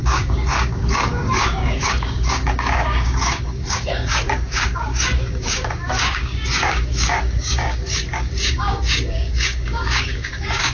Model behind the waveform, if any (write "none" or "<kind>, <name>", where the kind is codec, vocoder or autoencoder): codec, DAC